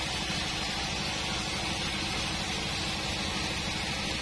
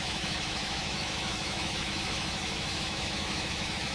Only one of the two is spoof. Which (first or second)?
second